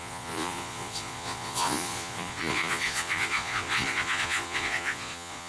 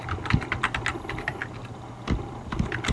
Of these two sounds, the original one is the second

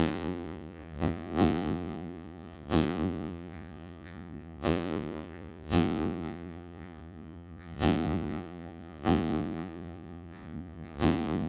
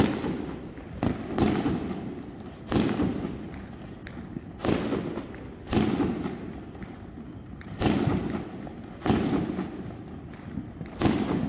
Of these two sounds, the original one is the second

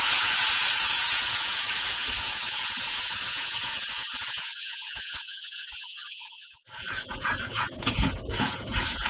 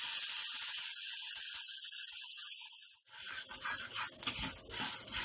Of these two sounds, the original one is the second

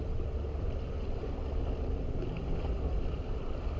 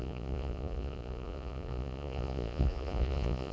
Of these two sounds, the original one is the first